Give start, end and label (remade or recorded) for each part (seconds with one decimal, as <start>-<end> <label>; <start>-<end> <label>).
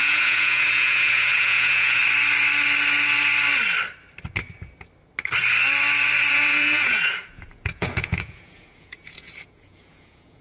0.0-2.0 remade; 2.0-6.3 recorded; 6.3-10.4 remade